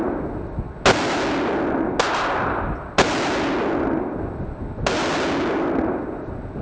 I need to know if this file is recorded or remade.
recorded